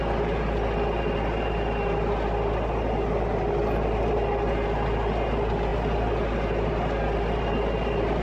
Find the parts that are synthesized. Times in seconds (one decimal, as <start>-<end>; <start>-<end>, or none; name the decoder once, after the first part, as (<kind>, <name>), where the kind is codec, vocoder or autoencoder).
none